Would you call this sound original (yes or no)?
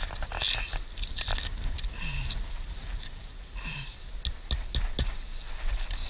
yes